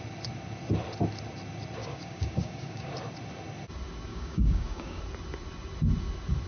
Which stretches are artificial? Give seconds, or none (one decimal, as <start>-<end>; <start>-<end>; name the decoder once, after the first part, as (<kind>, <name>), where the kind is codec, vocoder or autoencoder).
1.8-2.9 (codec, DAC); 4.1-5.0